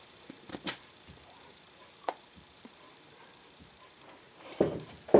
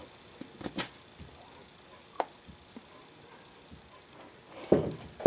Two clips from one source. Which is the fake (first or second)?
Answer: first